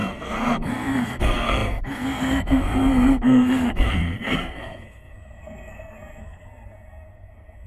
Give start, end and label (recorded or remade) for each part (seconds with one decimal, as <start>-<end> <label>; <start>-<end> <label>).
0.0-7.7 remade